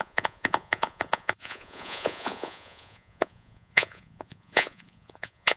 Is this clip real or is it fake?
fake